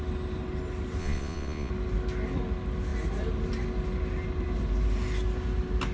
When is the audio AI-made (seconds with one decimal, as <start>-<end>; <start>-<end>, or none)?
1.0-1.7